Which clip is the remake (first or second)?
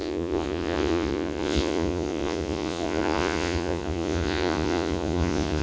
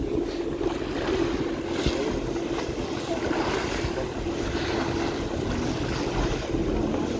first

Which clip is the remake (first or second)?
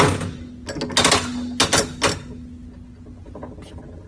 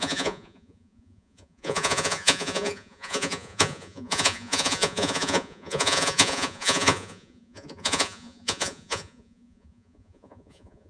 second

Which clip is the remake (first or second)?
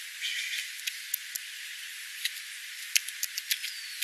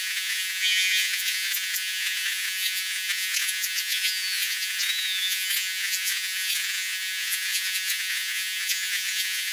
second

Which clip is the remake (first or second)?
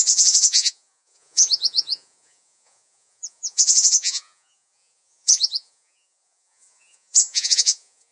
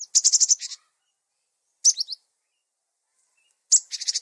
first